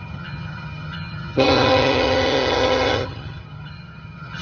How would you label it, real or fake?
fake